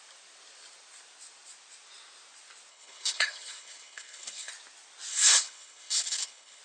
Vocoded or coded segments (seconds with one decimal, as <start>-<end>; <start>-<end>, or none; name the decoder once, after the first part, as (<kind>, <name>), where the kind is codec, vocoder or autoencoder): 2.7-4.5 (codec, HILCodec); 5.1-6.6